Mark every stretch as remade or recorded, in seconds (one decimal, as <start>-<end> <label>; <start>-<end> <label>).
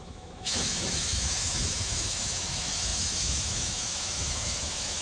0.0-5.0 remade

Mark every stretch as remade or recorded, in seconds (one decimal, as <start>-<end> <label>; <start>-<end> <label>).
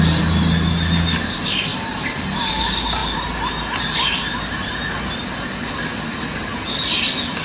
0.0-7.4 recorded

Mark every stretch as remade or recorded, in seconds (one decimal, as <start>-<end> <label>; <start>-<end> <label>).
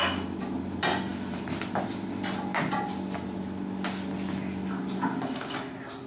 0.0-6.1 recorded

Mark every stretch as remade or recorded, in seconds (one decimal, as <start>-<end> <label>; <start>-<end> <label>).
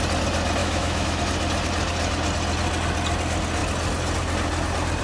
0.0-0.6 recorded; 0.6-1.2 remade; 1.2-5.0 recorded